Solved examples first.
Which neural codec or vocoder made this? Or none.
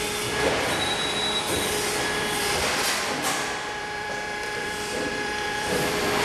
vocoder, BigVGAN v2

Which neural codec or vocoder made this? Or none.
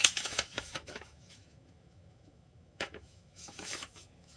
autoencoder, DAC-VAE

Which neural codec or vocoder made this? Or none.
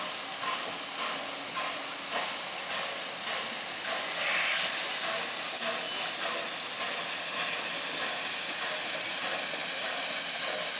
none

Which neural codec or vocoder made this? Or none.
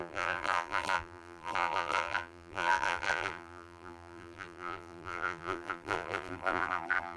vocoder, BigVGAN v2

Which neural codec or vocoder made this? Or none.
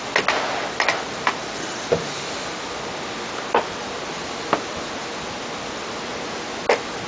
none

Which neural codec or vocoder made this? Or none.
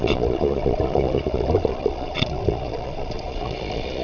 vocoder, Vocos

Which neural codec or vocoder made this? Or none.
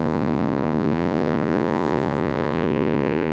vocoder, Vocos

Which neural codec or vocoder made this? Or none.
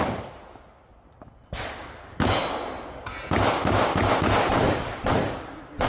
none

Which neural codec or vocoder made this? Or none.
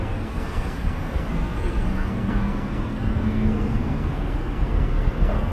codec, SNAC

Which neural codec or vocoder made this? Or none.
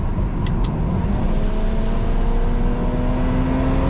none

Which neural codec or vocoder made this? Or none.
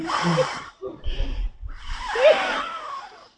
vocoder, BigVGAN v2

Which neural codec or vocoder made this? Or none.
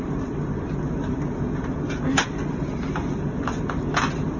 none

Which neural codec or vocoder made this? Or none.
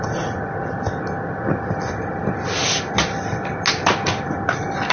none